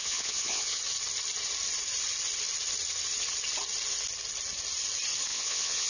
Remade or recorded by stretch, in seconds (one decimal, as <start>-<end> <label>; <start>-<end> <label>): 0.0-0.8 remade; 0.8-5.3 recorded; 5.3-5.9 remade